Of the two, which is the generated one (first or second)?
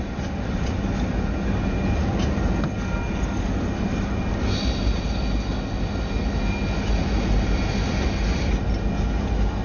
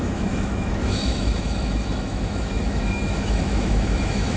second